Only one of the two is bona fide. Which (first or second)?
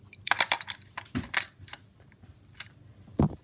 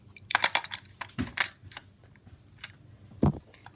second